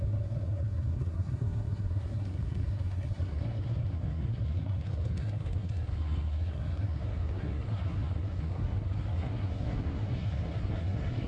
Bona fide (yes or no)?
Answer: no